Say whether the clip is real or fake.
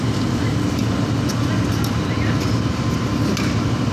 real